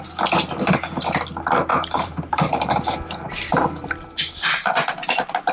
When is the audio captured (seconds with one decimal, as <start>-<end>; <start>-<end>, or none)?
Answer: 0.0-1.7; 4.5-5.5